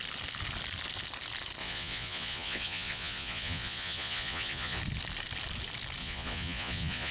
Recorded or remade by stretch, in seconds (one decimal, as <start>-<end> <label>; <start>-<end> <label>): 0.0-1.6 recorded; 1.6-4.8 remade; 4.8-6.0 recorded; 6.0-7.1 remade